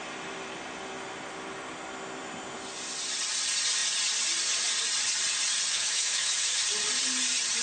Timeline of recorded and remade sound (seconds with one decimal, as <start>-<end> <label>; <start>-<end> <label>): 0.0-5.7 recorded; 5.7-6.6 remade; 6.6-7.6 recorded